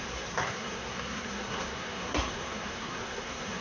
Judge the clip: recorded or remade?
remade